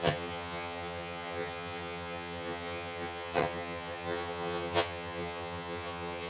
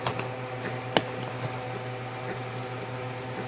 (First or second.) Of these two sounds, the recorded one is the second